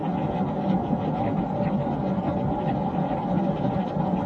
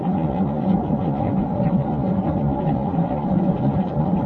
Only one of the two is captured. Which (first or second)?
first